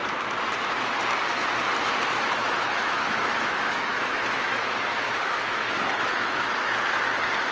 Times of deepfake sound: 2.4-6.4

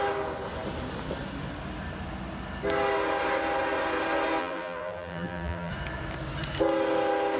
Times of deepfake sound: 4.4-5.7

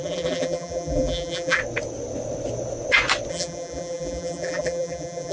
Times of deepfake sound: 0.0-1.6; 3.3-5.3